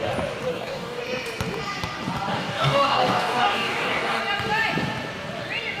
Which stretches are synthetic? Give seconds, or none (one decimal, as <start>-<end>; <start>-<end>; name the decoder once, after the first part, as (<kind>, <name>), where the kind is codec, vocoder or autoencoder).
0.5-1.0 (codec, DAC); 2.3-4.2